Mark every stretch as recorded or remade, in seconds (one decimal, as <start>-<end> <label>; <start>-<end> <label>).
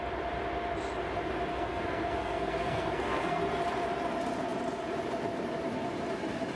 0.0-1.5 recorded; 1.5-3.4 remade; 3.4-6.6 recorded